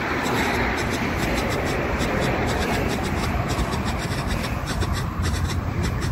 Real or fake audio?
fake